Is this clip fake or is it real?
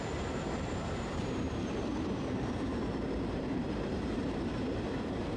fake